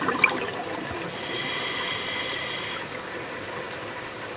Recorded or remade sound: recorded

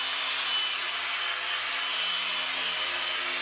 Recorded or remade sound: recorded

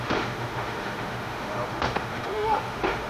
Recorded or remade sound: remade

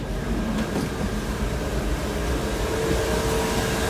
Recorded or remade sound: recorded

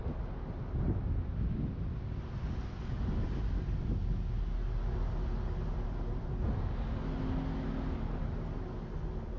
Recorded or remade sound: recorded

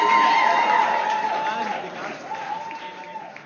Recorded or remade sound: remade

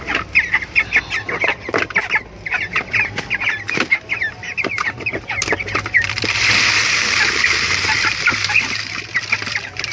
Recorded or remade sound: remade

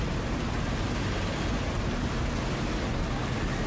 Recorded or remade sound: recorded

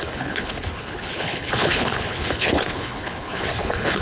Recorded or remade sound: remade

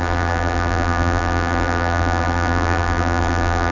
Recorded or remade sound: remade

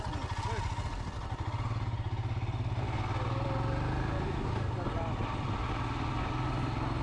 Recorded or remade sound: recorded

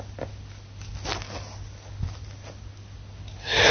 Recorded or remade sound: recorded